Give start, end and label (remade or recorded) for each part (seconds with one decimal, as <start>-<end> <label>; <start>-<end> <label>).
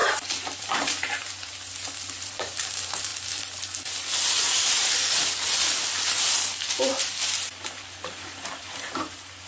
0.0-3.1 remade; 3.1-7.0 recorded; 7.0-9.5 remade